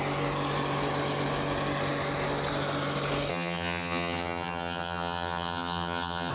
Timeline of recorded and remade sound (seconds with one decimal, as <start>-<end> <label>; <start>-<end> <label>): 0.0-3.3 recorded; 3.3-6.3 remade